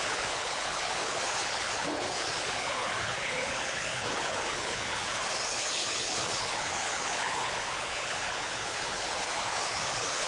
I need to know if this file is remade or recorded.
remade